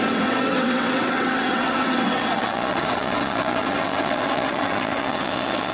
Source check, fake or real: fake